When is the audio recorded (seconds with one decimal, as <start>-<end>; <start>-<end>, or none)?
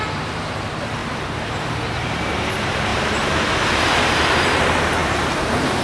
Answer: none